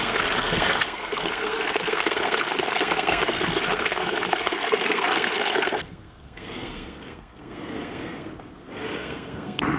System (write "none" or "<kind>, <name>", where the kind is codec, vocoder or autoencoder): codec, SNAC